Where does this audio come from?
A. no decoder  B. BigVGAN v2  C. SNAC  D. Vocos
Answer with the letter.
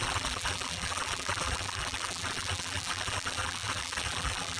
B